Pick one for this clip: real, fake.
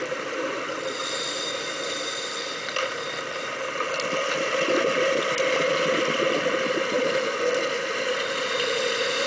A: fake